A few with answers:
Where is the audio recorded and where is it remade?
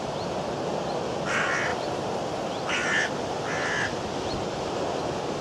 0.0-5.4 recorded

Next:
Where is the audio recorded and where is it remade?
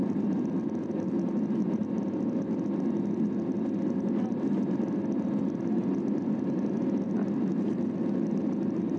0.0-1.8 remade; 1.8-3.4 recorded; 3.4-6.8 remade; 6.8-8.4 recorded; 8.4-9.0 remade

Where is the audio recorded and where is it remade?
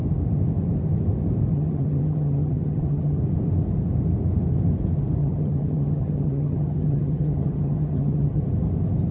0.0-1.5 recorded; 1.5-3.2 remade; 3.2-5.2 recorded; 5.2-8.4 remade; 8.4-9.1 recorded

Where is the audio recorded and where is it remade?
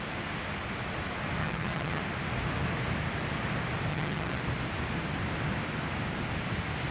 0.0-1.4 recorded; 1.4-2.0 remade; 2.0-3.9 recorded; 3.9-4.4 remade; 4.4-6.9 recorded